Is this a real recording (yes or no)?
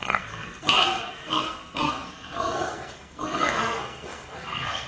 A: no